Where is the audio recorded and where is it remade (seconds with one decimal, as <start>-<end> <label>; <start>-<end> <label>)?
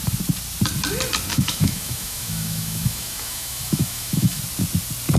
0.0-1.3 recorded; 1.3-4.4 remade; 4.4-5.2 recorded